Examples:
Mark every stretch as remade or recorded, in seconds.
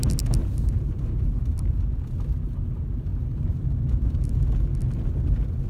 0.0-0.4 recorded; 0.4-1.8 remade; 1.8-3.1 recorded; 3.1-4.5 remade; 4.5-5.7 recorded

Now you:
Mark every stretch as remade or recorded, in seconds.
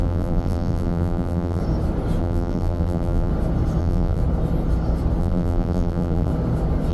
0.0-1.6 remade; 1.6-2.2 recorded; 2.2-3.3 remade; 3.3-3.8 recorded; 3.8-4.2 remade; 4.2-5.2 recorded; 5.2-6.3 remade; 6.3-6.9 recorded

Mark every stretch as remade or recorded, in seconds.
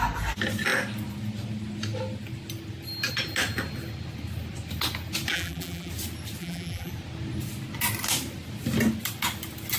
0.0-5.3 recorded; 5.3-5.9 remade; 5.9-6.4 recorded; 6.4-6.9 remade; 6.9-9.8 recorded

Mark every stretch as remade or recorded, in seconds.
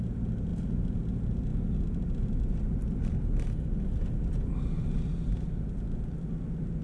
0.0-0.5 recorded; 0.5-1.0 remade; 1.0-6.8 recorded